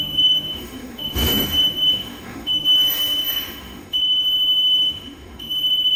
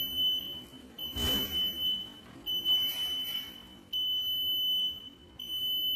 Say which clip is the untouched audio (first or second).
second